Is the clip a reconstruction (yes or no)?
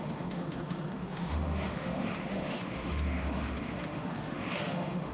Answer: yes